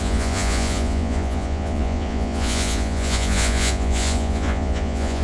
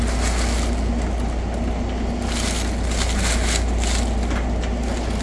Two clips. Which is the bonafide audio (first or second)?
second